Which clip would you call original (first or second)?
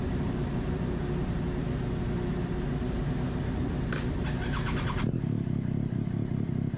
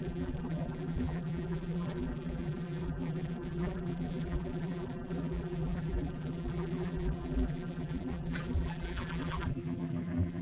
first